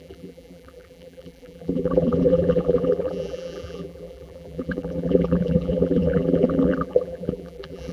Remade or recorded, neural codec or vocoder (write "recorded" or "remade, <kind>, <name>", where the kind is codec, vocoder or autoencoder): remade, vocoder, BigVGAN v2